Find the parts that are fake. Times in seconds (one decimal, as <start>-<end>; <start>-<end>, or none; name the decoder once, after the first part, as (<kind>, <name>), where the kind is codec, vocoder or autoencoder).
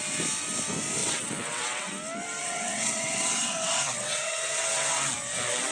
1.0-1.9 (vocoder, WaveNeXt); 2.4-5.1